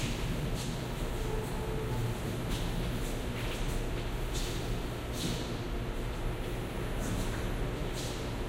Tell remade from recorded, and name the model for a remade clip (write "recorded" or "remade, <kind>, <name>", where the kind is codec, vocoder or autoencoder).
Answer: recorded